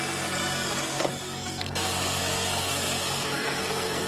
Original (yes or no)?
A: no